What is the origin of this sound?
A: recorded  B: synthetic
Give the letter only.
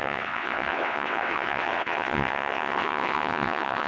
B